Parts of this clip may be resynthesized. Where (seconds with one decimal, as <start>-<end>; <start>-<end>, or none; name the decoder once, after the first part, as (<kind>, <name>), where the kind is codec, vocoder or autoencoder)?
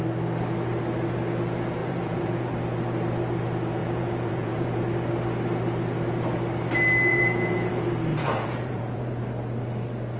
1.8-2.5 (vocoder, Vocos); 3.8-4.8; 7.1-7.7; 8.1-9.2